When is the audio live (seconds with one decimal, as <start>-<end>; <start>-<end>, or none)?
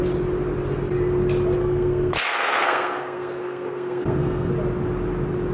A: 0.0-1.6; 4.5-5.5